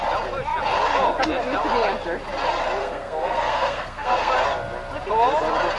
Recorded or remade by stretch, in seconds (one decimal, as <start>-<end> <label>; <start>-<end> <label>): 0.0-2.8 recorded; 2.8-4.3 remade; 4.3-5.8 recorded